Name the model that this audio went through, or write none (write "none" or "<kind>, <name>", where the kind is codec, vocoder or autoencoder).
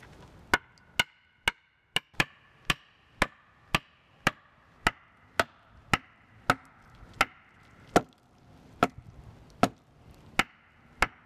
none